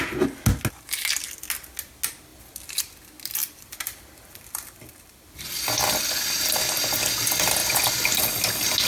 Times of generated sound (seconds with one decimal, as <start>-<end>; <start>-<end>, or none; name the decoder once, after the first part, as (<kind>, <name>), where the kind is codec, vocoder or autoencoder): 2.3-2.8 (vocoder, BigVGAN v2); 3.4-6.2; 7.6-8.2